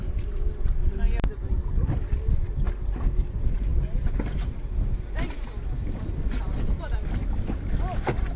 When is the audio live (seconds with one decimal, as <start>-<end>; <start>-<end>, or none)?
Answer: 0.0-8.4